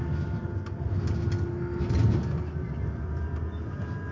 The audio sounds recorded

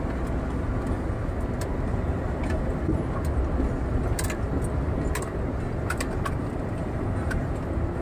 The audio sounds recorded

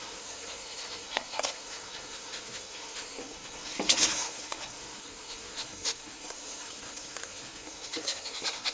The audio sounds remade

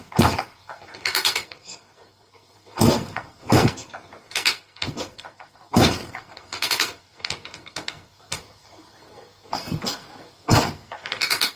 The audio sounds remade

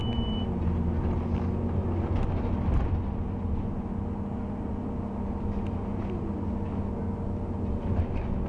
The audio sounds recorded